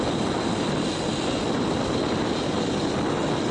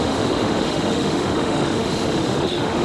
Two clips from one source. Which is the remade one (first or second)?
second